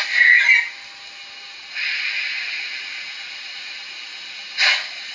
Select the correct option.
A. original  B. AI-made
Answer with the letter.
A